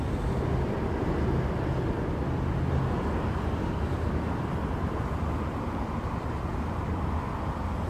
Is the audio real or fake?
real